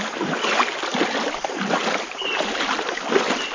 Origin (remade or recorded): recorded